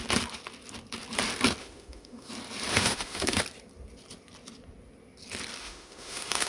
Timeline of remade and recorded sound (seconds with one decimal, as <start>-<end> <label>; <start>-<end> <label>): 0.0-1.6 recorded; 1.6-2.3 remade; 2.3-2.7 recorded; 2.7-3.4 remade; 3.4-5.6 recorded; 5.6-6.5 remade